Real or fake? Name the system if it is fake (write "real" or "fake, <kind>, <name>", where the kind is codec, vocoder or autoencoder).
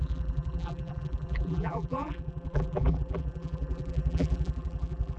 fake, vocoder, BigVGAN v2